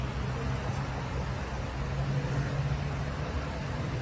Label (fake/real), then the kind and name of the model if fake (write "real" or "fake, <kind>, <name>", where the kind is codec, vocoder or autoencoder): real